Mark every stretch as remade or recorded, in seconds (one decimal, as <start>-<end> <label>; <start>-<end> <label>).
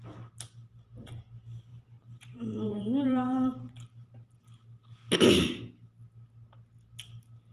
0.0-1.7 recorded; 1.7-4.4 remade; 4.4-7.5 recorded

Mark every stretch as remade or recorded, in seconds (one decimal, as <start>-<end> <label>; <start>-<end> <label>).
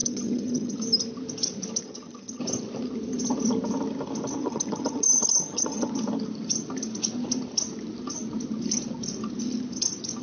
0.0-0.8 remade; 0.8-1.8 recorded; 1.8-2.4 remade; 2.4-4.4 recorded; 4.4-5.9 remade; 5.9-10.2 recorded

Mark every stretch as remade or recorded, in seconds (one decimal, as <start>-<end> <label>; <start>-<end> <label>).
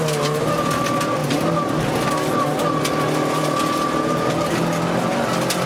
0.0-5.7 recorded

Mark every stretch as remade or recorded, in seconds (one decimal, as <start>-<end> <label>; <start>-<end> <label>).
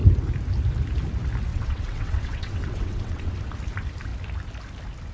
0.0-1.5 recorded; 1.5-3.3 remade; 3.3-5.1 recorded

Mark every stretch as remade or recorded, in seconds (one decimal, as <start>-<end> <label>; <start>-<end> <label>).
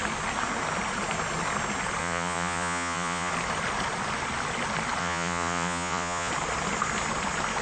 0.0-2.0 recorded; 2.0-3.3 remade; 3.3-5.0 recorded; 5.0-6.3 remade; 6.3-7.6 recorded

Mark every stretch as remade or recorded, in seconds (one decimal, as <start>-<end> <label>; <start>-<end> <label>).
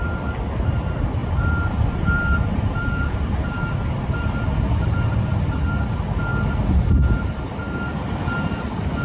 0.0-1.2 recorded; 1.2-5.7 remade; 5.7-9.0 recorded